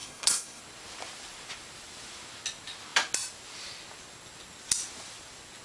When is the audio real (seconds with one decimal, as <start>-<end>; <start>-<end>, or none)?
0.6-5.6